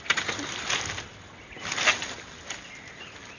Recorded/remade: recorded